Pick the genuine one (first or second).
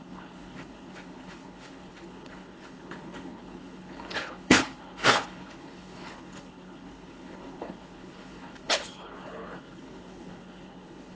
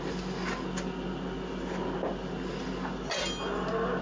second